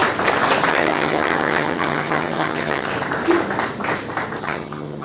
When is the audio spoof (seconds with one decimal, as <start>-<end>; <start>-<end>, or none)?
0.7-2.9; 4.4-5.0